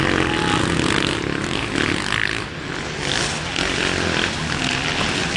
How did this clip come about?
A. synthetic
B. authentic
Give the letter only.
B